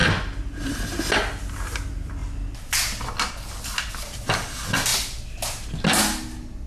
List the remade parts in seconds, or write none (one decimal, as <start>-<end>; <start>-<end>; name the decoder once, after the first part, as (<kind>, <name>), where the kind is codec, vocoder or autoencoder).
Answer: none

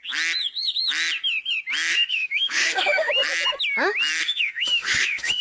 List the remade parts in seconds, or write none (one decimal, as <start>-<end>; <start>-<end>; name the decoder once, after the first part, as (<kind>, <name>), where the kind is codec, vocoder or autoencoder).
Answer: 1.9-3.1 (autoencoder, DAC-VAE); 4.2-5.4